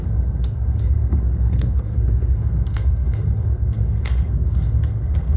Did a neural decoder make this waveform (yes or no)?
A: yes